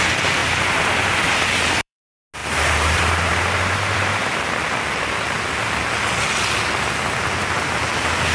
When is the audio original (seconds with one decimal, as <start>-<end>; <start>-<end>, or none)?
0.0-0.4; 2.0-2.4; 4.4-8.3

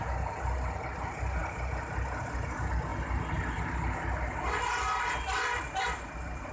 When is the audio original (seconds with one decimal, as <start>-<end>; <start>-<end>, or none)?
0.0-6.5

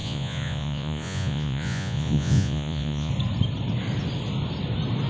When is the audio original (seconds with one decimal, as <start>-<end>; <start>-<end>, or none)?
3.1-5.1

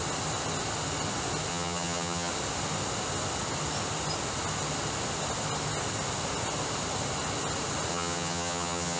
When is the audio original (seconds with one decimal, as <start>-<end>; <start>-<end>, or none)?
0.0-1.5; 2.3-7.9

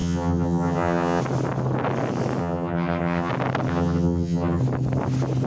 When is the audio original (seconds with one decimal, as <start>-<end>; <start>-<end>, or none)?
1.2-2.4; 3.3-3.7; 4.6-5.5

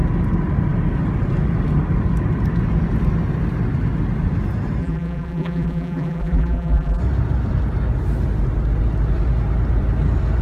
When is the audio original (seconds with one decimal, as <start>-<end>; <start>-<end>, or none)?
0.0-4.8; 7.0-10.4